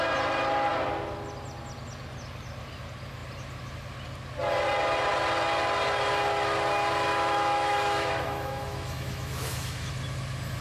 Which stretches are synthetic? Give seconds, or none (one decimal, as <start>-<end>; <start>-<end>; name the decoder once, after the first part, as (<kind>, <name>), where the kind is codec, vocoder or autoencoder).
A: 7.1-9.9 (autoencoder, DAC-VAE)